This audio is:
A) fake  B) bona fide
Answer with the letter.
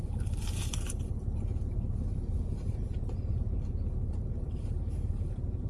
A